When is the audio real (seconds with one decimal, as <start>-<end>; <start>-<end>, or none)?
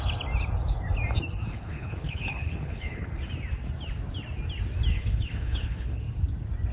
0.0-1.5; 3.1-4.9; 6.0-6.7